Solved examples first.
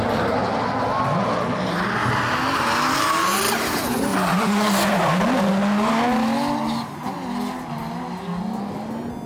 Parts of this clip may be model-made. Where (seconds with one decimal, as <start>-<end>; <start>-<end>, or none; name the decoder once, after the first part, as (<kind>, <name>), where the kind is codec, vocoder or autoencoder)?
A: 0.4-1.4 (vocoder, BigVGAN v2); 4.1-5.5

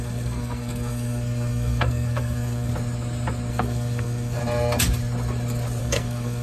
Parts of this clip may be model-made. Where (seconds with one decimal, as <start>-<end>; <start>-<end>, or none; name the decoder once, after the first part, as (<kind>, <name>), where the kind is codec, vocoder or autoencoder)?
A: 0.0-2.7 (codec, SNAC); 3.5-4.4; 5.8-6.4

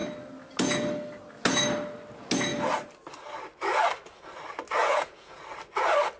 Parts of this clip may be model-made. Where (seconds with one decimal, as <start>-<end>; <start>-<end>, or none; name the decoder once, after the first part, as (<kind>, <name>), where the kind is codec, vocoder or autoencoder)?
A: 4.8-5.4 (vocoder, Vocos)

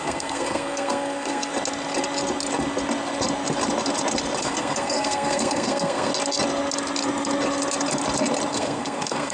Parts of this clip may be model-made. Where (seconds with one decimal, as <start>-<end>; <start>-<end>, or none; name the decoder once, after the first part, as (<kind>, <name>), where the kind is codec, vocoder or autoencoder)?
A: 0.0-1.5 (codec, SNAC); 4.4-6.1; 8.5-9.3

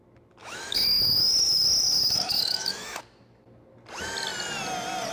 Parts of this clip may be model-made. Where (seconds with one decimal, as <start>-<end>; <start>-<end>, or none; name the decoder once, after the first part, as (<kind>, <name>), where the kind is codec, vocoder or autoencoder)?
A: 0.4-3.0 (autoencoder, DAC-VAE)